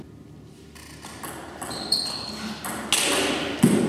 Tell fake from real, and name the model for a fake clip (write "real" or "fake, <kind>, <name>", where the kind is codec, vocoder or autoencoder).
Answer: real